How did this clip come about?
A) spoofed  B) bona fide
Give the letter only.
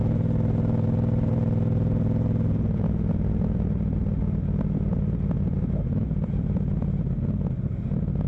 B